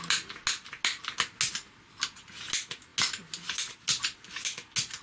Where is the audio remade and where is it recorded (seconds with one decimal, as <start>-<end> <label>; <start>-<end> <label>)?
0.0-5.0 recorded